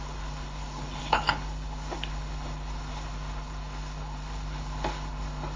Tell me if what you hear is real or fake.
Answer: fake